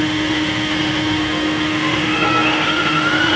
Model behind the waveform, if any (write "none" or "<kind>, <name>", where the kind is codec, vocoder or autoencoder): autoencoder, DAC-VAE